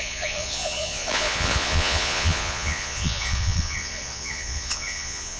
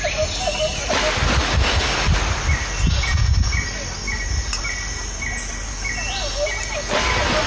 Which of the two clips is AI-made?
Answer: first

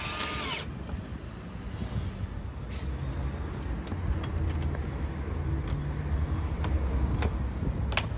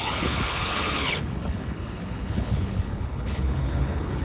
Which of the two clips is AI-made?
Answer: second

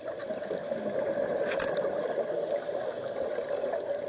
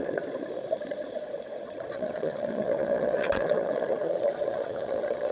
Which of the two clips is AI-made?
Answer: second